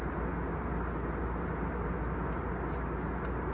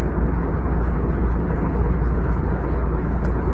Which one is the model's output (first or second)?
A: second